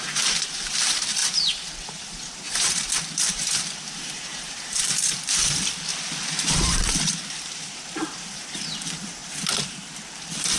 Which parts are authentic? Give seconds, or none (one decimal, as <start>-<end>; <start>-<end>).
5.9-6.5; 9.2-9.7